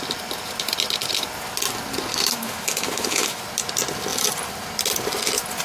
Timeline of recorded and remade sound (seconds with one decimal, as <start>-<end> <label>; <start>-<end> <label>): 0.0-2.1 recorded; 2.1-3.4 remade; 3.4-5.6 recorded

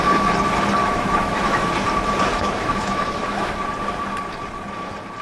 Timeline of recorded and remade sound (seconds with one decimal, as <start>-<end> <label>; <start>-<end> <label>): 0.0-0.8 recorded; 0.8-1.7 remade; 1.7-2.3 recorded; 2.3-3.5 remade; 3.5-5.2 recorded

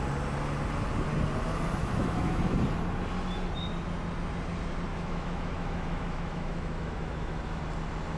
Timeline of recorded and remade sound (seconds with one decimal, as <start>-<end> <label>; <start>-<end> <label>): 0.0-1.8 recorded; 1.8-2.6 remade; 2.6-4.9 recorded; 4.9-7.6 remade; 7.6-8.2 recorded